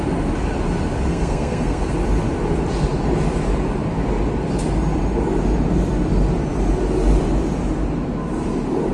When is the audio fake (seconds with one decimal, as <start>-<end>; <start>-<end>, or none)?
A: 1.1-1.9